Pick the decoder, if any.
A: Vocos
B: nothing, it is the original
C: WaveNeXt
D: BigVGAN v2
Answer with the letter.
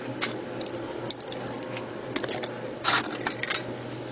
B